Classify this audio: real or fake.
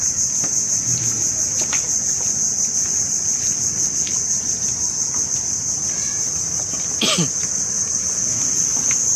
real